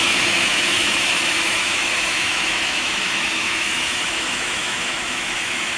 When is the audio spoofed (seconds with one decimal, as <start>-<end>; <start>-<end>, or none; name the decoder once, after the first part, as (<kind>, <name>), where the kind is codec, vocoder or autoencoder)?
0.0-5.8 (autoencoder, DAC-VAE)